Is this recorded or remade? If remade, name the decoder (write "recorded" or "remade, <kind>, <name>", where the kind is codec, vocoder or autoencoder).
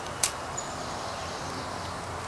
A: recorded